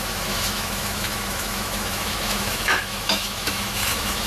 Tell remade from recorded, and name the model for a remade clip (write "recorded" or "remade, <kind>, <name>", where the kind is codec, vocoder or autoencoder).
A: remade, autoencoder, DAC-VAE